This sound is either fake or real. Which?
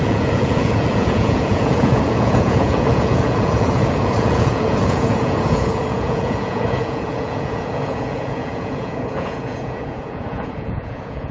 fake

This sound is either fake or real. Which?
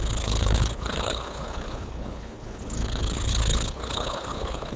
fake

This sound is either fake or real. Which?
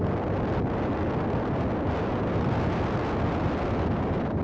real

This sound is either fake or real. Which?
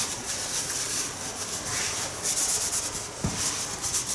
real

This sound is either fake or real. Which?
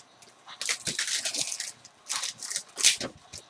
real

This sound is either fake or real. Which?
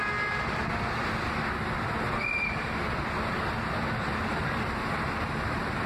real